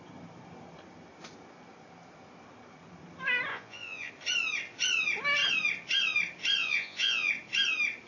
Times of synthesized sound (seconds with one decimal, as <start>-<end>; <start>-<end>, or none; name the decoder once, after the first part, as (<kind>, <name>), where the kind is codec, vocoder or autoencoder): 3.5-4.1 (vocoder, Vocos); 6.6-7.3